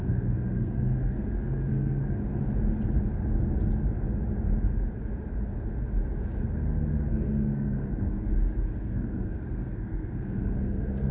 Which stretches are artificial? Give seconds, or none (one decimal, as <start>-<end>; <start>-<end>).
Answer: 0.0-2.0; 6.9-8.3; 8.8-11.1